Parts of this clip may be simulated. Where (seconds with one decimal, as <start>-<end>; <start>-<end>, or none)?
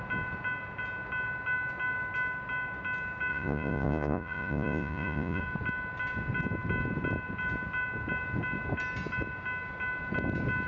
3.3-5.4